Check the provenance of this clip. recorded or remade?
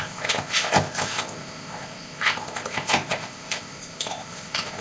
remade